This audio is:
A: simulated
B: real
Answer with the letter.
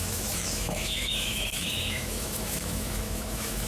A